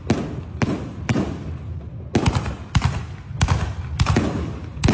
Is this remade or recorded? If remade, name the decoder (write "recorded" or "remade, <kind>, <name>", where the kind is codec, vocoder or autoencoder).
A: recorded